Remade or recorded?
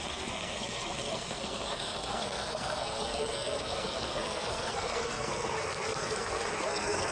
remade